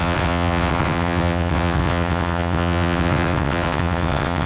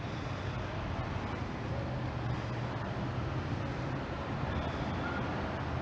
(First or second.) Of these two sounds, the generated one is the first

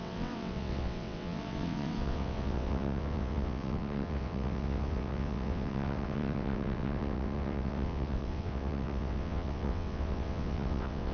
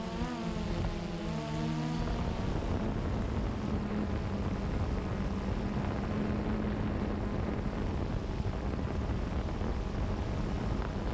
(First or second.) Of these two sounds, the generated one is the first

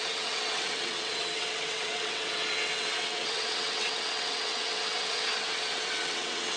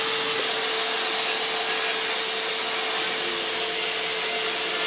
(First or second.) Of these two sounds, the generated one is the first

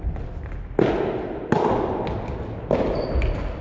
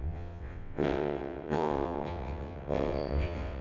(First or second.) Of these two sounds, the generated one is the second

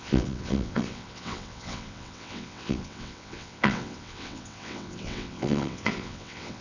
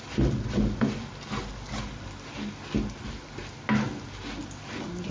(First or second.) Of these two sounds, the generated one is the first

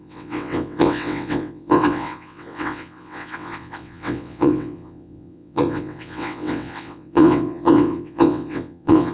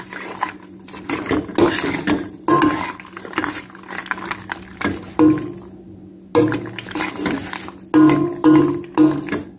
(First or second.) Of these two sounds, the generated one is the first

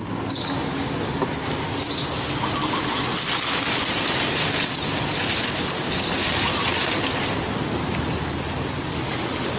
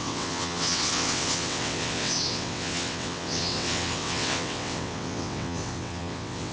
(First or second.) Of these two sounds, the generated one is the second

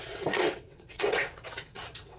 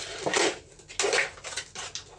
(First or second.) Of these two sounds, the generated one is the first